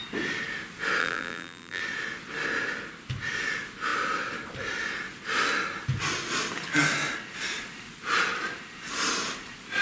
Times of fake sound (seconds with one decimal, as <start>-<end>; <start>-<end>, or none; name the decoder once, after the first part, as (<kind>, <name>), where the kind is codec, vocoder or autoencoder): 1.0-1.8 (vocoder, BigVGAN v2)